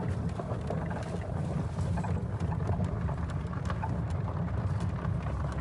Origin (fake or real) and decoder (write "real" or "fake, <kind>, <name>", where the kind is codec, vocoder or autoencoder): real